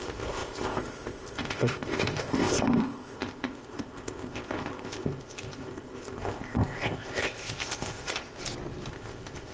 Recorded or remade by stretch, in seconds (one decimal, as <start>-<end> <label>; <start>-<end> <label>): 0.0-8.4 remade; 8.4-8.9 recorded; 8.9-9.5 remade

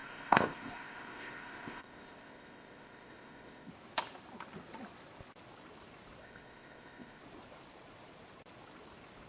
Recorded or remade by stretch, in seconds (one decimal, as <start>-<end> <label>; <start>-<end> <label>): 0.0-3.7 remade; 3.7-6.2 recorded; 6.2-7.2 remade; 7.2-9.3 recorded